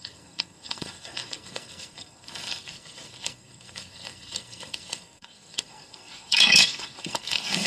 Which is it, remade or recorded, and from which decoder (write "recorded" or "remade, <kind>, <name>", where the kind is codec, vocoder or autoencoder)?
remade, codec, SNAC